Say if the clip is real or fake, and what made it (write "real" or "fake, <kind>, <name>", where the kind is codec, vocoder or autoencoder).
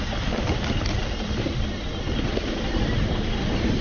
real